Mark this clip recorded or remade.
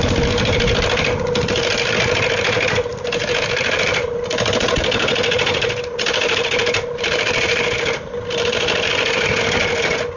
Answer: recorded